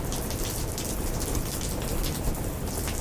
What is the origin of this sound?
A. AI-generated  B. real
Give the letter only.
B